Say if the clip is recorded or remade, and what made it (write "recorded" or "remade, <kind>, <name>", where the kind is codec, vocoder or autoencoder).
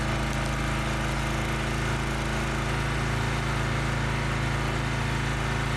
recorded